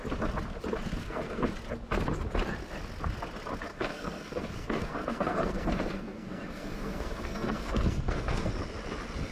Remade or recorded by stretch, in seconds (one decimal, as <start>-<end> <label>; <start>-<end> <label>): 0.0-1.0 recorded; 1.0-1.5 remade; 1.5-3.7 recorded; 3.7-8.5 remade; 8.5-9.3 recorded